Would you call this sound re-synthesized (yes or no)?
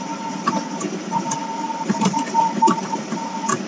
no